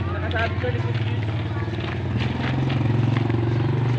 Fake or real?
real